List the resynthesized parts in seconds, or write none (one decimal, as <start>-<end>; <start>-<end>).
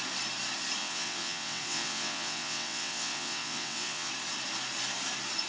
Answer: 0.8-4.1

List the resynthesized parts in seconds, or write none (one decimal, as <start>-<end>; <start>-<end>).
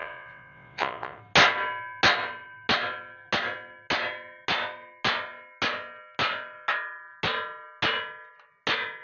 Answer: 0.0-1.2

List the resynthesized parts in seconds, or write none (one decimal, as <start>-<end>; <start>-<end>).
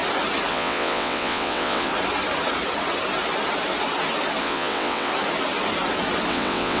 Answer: 0.5-1.9; 4.4-5.1; 6.3-6.8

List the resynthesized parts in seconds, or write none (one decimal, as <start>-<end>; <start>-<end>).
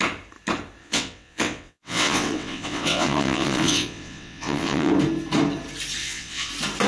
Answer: 0.8-4.9; 6.0-6.5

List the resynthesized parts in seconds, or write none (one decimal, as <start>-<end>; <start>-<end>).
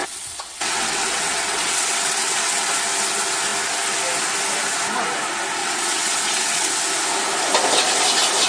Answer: 0.0-2.7; 5.6-6.7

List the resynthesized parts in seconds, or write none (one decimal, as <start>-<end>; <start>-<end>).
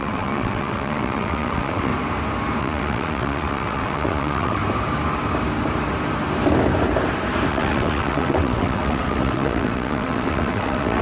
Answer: 0.0-1.9; 2.6-4.6; 7.5-11.0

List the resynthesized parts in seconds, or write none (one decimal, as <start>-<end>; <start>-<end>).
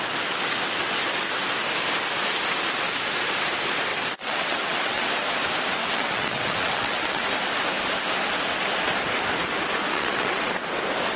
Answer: 3.9-5.1; 5.8-7.3; 9.9-10.5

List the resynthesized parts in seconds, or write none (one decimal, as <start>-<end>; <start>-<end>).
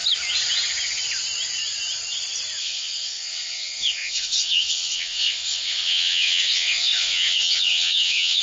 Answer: 2.6-8.4